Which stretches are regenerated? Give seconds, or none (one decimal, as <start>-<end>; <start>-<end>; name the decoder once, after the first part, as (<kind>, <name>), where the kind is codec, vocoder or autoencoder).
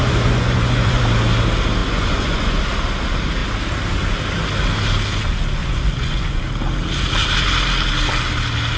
0.0-1.0 (vocoder, Vocos); 1.8-2.6; 5.6-6.4